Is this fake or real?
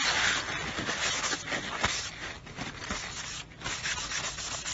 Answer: real